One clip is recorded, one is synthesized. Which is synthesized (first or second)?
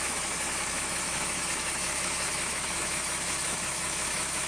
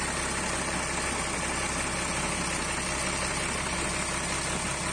first